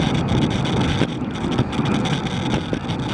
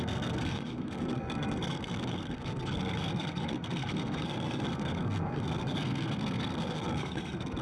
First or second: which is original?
first